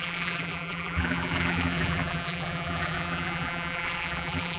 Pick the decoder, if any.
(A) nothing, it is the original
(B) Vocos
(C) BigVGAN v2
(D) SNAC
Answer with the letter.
C